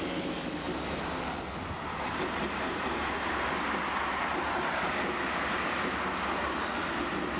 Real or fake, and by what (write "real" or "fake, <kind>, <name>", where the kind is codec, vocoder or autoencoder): real